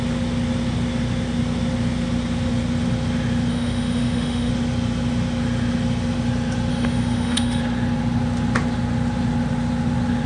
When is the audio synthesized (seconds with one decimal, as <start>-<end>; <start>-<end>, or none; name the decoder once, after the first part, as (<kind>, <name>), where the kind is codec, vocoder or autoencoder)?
3.5-4.5 (autoencoder, DAC-VAE); 6.7-7.6